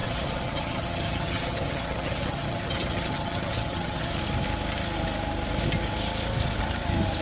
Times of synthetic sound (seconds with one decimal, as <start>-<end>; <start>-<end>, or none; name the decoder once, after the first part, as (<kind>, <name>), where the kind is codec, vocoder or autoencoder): 0.0-4.1 (vocoder, HiFi-GAN)